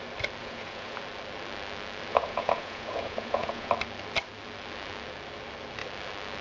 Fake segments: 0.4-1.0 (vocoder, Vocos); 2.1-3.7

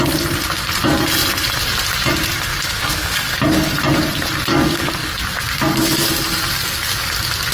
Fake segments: 2.5-3.4 (codec, DAC); 4.5-5.1

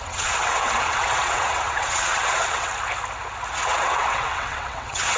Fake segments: 0.0-2.7 (vocoder, WaveNeXt); 3.5-5.2

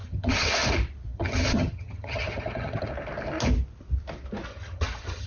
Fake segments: 0.0-0.5 (vocoder, HiFi-GAN); 1.1-2.9; 4.5-5.3

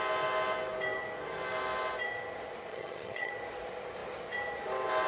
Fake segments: 2.7-3.3 (vocoder, HiFi-GAN)

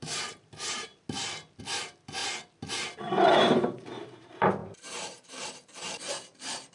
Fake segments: 0.0-0.9 (vocoder, BigVGAN v2); 1.6-2.2; 3.0-6.7

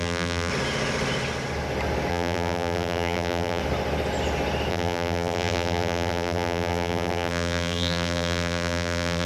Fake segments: 0.0-0.5 (vocoder, BigVGAN v2); 2.1-3.6; 4.7-9.3

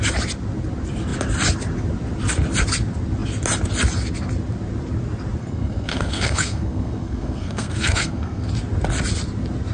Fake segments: 5.4-8.5 (codec, SNAC)